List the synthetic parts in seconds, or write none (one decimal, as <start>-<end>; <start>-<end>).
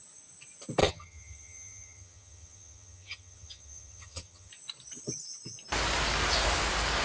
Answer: 0.8-4.5